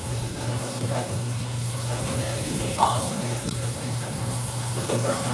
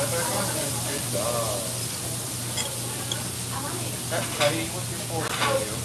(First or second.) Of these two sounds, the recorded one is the second